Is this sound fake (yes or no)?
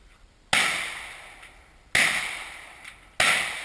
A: no